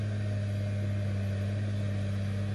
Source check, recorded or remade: recorded